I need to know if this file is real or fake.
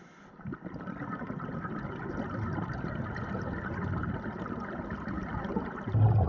real